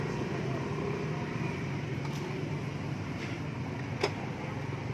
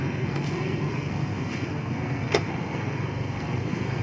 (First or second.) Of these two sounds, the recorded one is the first